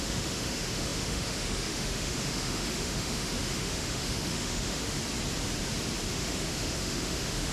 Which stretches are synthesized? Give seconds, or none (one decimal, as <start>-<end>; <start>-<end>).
0.0-5.0; 6.1-7.5